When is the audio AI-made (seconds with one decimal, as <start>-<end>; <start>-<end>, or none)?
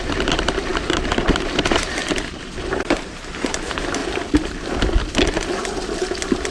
0.0-2.0; 2.6-4.0